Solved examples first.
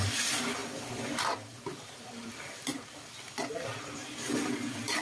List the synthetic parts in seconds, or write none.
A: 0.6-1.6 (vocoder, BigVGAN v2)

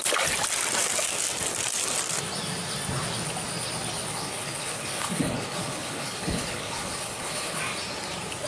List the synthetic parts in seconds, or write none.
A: 4.1-7.6 (codec, HILCodec)

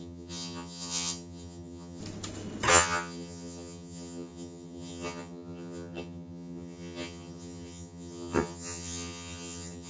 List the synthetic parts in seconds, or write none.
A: 0.0-2.0 (vocoder, HiFi-GAN); 2.7-9.9

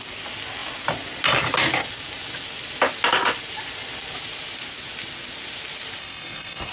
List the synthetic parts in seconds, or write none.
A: 6.0-6.7 (codec, SNAC)

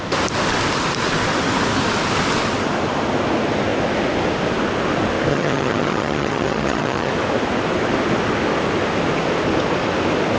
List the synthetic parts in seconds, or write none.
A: 5.3-7.1 (vocoder, HiFi-GAN)